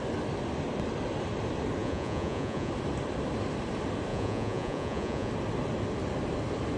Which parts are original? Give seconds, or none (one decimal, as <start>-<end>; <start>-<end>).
0.0-1.8; 2.7-4.1; 5.3-6.8